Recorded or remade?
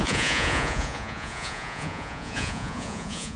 remade